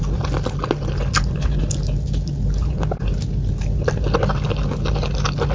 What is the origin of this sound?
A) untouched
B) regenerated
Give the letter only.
A